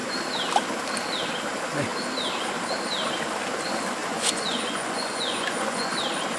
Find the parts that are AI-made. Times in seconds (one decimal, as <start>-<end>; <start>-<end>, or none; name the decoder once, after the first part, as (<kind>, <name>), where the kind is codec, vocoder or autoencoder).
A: 4.0-5.9 (vocoder, Vocos)